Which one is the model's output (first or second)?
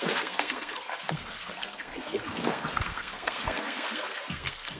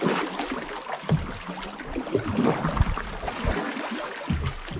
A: first